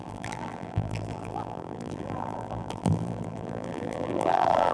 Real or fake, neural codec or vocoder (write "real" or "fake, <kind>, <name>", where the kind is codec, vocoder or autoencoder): fake, vocoder, BigVGAN v2